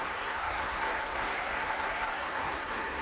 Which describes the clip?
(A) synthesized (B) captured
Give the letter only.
A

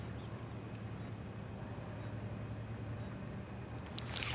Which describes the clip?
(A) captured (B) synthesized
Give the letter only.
A